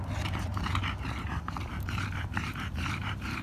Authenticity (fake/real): fake